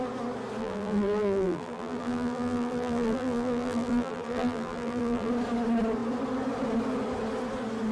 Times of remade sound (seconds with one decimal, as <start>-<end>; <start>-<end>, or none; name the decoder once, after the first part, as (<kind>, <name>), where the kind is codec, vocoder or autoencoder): 0.6-5.3 (vocoder, BigVGAN v2)

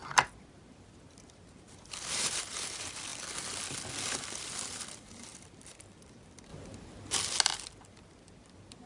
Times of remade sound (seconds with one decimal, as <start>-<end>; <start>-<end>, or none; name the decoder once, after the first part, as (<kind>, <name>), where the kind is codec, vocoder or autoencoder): 0.0-3.1 (vocoder, BigVGAN v2); 3.7-6.5; 7.4-8.9

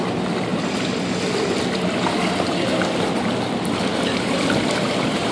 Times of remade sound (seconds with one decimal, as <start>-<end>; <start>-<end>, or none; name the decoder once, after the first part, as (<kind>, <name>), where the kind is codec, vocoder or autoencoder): 3.9-5.3 (vocoder, BigVGAN v2)

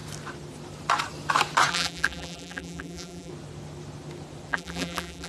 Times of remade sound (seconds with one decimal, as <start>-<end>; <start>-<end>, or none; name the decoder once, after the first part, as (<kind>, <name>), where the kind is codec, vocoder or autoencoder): 1.7-3.3 (vocoder, BigVGAN v2); 4.5-5.3

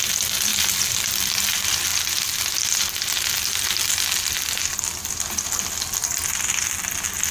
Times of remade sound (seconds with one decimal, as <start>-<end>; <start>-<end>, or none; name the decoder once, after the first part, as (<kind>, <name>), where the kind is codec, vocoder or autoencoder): 0.0-1.9 (vocoder, BigVGAN v2); 3.3-6.0; 6.8-7.3

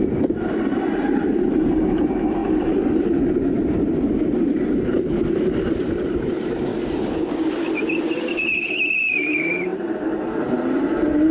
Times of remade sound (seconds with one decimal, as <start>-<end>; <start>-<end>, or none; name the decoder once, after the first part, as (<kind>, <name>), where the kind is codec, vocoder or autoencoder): 0.0-6.7 (vocoder, BigVGAN v2); 8.0-11.3